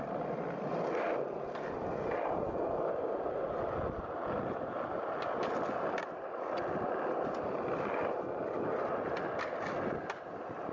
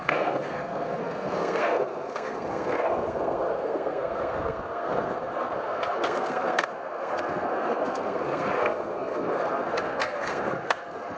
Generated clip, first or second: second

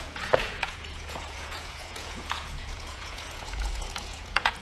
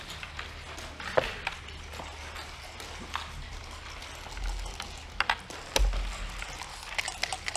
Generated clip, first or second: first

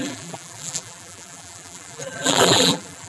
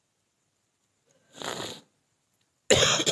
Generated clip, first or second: first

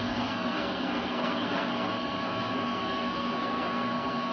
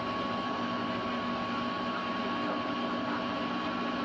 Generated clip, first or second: first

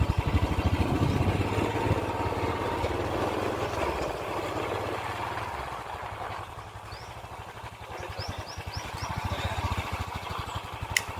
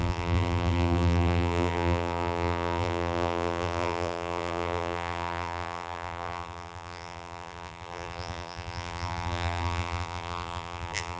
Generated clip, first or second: second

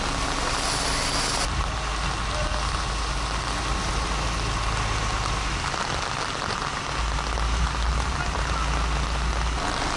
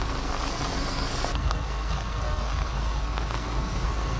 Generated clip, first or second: second